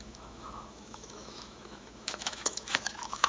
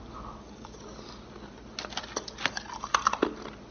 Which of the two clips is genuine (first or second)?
second